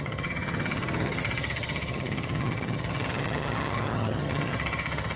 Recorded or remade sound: remade